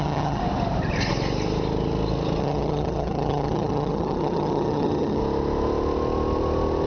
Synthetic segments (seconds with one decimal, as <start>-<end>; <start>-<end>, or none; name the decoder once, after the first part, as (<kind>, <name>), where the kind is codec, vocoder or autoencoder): 0.0-0.4 (vocoder, HiFi-GAN); 2.4-5.2

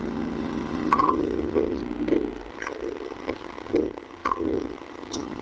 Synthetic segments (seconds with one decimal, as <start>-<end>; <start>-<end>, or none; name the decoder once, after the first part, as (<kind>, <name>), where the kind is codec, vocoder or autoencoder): 0.0-1.8 (vocoder, HiFi-GAN); 2.5-5.4

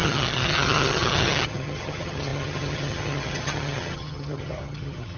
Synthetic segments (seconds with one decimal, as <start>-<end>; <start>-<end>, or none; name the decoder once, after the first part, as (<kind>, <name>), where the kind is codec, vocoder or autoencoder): 0.0-5.2 (vocoder, HiFi-GAN)